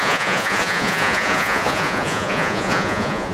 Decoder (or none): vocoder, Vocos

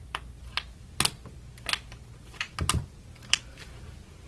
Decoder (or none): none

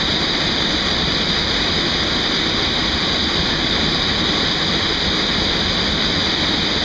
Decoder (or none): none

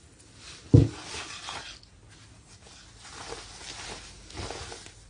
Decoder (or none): none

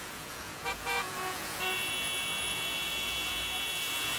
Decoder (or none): vocoder, Vocos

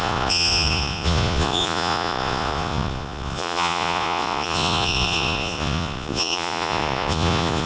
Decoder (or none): vocoder, Vocos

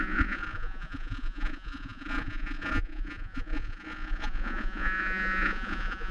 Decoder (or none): vocoder, Vocos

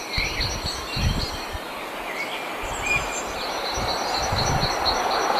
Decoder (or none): none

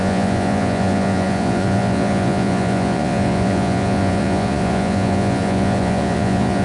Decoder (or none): vocoder, Vocos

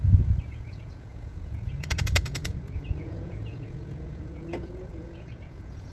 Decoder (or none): vocoder, Vocos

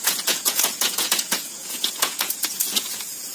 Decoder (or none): vocoder, Vocos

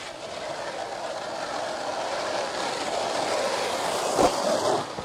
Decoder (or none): none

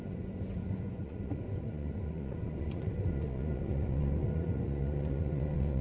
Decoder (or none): vocoder, Vocos